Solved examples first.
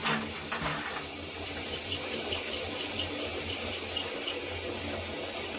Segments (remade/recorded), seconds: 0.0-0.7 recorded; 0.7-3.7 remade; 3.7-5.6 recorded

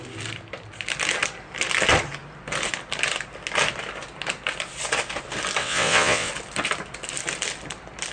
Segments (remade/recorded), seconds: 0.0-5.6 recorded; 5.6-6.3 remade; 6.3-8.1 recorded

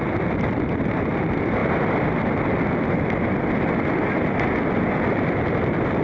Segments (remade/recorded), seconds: 0.0-6.0 recorded

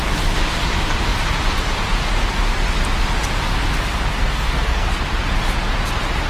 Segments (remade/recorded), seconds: 0.0-4.1 recorded; 4.1-4.9 remade; 4.9-6.3 recorded

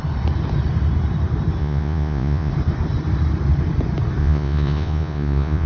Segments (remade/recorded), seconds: 0.0-1.6 recorded; 1.6-2.5 remade; 2.5-4.2 recorded; 4.2-5.7 remade